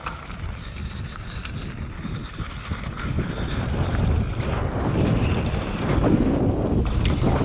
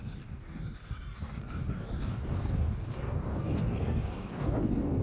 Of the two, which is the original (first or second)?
first